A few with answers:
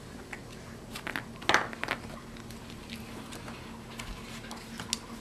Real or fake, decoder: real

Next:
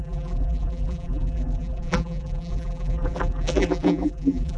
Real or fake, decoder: fake, vocoder, BigVGAN v2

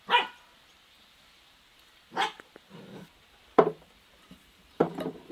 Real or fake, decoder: fake, vocoder, BigVGAN v2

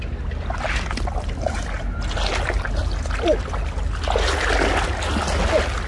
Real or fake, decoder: real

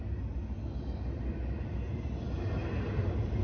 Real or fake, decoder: real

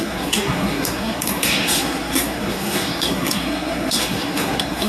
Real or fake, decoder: fake, codec, SNAC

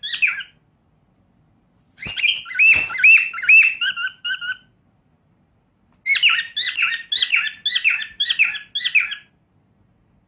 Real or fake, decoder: real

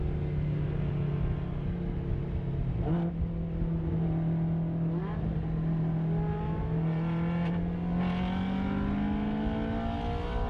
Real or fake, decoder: real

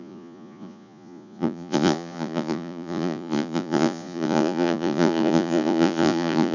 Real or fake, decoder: fake, vocoder, Vocos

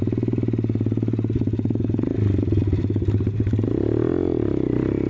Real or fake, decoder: real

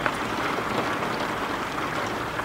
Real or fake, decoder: real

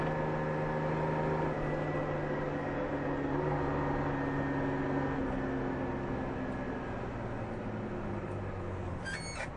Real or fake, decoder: real